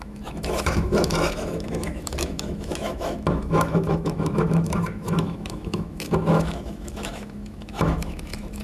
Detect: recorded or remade remade